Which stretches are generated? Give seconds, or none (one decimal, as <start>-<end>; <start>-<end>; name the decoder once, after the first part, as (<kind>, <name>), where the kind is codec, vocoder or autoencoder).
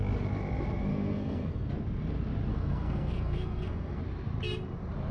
0.9-1.7 (codec, SNAC); 2.5-4.0